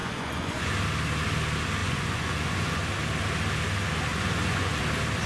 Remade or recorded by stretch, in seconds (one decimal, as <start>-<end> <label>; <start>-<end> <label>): 0.0-0.7 remade; 0.7-1.8 recorded; 1.8-2.8 remade; 2.8-4.1 recorded; 4.1-4.8 remade; 4.8-5.3 recorded